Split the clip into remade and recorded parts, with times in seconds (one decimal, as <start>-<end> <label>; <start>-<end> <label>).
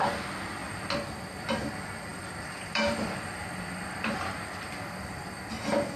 0.0-0.6 recorded; 0.6-1.7 remade; 1.7-2.1 recorded; 2.1-6.0 remade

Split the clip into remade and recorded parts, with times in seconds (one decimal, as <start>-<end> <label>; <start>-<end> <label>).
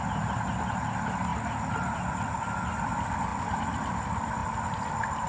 0.0-5.3 recorded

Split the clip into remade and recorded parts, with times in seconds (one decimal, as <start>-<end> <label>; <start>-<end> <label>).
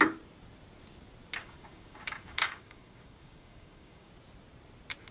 0.0-1.4 recorded; 1.4-4.1 remade; 4.1-5.1 recorded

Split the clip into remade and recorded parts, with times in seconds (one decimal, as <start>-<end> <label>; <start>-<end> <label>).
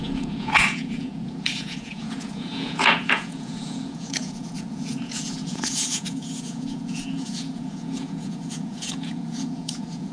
0.0-10.1 remade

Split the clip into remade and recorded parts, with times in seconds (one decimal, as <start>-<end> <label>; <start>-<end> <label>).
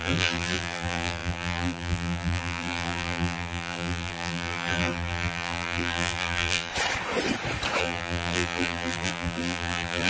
0.0-6.7 remade; 6.7-7.8 recorded; 7.8-10.1 remade